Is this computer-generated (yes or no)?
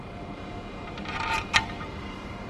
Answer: yes